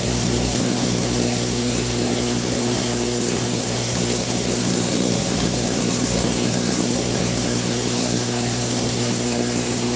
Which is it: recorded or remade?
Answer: remade